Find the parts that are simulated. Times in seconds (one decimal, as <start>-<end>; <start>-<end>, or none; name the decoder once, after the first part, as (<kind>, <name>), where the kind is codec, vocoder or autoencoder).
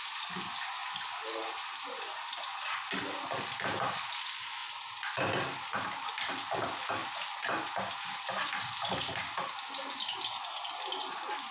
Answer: none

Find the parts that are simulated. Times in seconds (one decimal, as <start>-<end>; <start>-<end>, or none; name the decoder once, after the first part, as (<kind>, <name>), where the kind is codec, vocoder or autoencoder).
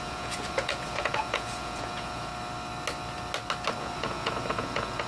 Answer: 0.0-2.3 (vocoder, Vocos); 3.8-5.1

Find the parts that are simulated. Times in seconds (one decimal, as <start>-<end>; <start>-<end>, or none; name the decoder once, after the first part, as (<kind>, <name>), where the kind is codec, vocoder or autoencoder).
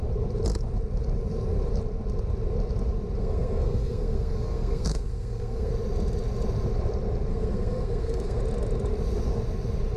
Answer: 3.2-5.7 (codec, SNAC); 7.3-8.4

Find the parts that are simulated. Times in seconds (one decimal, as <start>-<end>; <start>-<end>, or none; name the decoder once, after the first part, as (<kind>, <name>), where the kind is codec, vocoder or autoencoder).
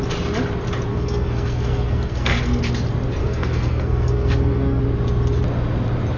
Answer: 0.9-2.6 (codec, SNAC); 3.2-4.8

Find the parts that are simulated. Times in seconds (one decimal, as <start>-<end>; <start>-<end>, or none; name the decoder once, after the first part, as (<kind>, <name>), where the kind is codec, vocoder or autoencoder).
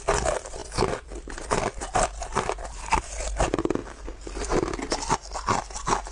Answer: none